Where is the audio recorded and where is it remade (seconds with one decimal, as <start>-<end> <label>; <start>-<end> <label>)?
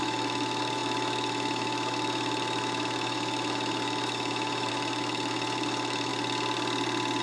0.0-6.1 remade; 6.1-7.2 recorded